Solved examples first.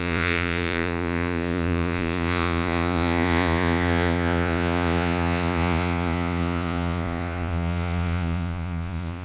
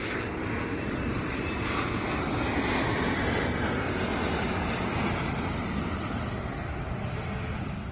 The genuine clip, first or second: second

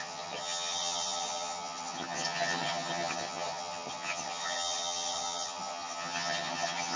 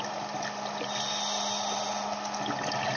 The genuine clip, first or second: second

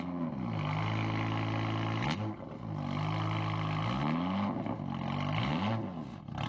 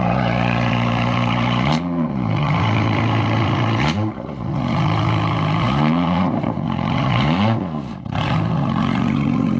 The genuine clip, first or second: first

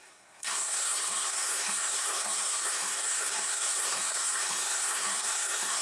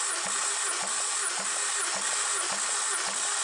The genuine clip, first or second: second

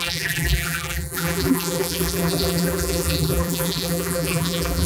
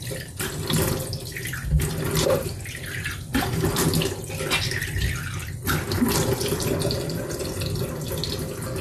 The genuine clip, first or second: second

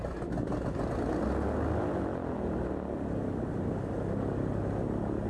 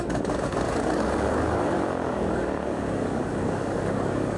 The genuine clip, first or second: first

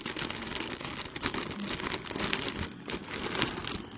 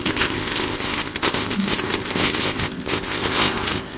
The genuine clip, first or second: first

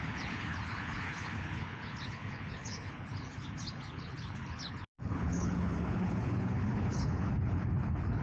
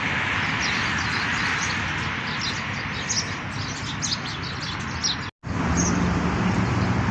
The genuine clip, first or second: second